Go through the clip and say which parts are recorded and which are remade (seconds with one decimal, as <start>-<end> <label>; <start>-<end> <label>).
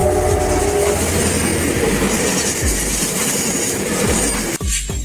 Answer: 0.0-1.5 recorded; 1.5-4.5 remade; 4.5-5.0 recorded